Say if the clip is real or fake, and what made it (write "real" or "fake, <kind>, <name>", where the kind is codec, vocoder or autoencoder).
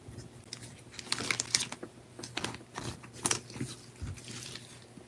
real